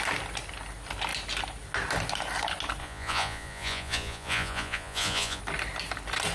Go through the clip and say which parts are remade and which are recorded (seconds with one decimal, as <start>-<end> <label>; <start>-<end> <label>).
0.0-2.8 recorded; 2.8-5.4 remade; 5.4-6.3 recorded